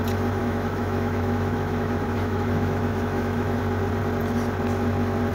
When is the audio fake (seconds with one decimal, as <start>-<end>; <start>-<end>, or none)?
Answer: 0.4-3.6